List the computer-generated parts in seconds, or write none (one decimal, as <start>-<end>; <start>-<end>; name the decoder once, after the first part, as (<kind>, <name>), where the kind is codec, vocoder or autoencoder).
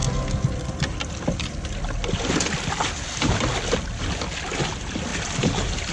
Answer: 5.1-5.9 (vocoder, BigVGAN v2)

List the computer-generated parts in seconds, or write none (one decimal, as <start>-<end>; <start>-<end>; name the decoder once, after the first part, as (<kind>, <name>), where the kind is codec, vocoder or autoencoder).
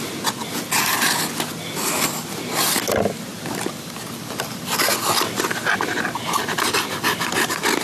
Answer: 5.6-6.9 (vocoder, BigVGAN v2)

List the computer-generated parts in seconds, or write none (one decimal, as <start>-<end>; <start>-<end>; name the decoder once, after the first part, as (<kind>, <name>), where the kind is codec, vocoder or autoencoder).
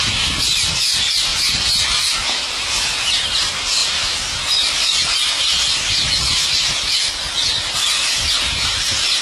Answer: 1.3-2.5 (vocoder, BigVGAN v2)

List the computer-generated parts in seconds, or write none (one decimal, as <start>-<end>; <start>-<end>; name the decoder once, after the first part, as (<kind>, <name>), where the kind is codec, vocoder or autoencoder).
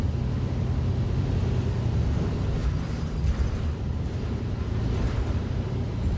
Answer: 2.6-3.2 (vocoder, BigVGAN v2)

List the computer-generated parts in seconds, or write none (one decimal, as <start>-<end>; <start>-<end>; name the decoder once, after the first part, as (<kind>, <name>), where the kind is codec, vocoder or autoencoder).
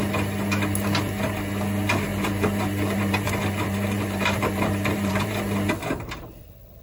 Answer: 2.1-5.4 (vocoder, BigVGAN v2)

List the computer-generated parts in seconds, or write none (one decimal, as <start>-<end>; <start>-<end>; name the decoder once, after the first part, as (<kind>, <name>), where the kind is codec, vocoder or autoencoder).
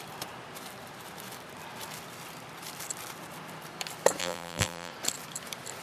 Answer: 4.2-4.9 (vocoder, BigVGAN v2)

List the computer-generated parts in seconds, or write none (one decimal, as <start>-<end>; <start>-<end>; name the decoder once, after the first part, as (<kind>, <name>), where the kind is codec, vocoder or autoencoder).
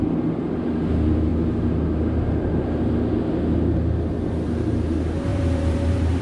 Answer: 5.3-6.2 (vocoder, BigVGAN v2)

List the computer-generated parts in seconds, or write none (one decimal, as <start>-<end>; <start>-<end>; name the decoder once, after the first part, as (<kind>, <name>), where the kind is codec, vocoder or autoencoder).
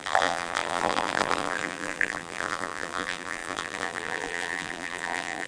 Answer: 0.0-5.5 (vocoder, BigVGAN v2)